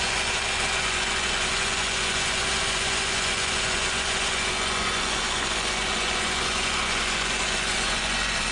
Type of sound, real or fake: fake